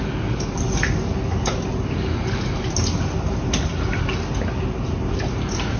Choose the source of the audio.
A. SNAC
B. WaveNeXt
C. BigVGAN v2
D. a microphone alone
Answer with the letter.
D